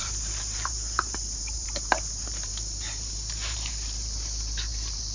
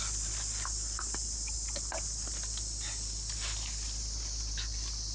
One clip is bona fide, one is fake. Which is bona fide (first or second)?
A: second